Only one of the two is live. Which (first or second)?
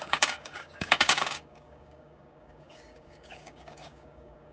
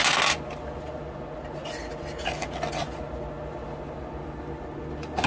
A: second